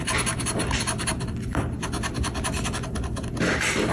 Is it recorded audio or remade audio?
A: recorded